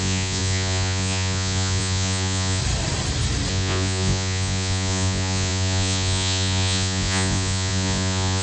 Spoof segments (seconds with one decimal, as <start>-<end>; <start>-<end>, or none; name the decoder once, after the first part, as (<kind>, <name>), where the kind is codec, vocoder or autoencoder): 0.0-2.6 (vocoder, Vocos); 3.5-8.4